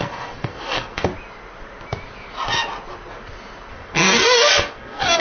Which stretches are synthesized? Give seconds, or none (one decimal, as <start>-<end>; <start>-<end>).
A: 0.0-1.1; 3.7-5.2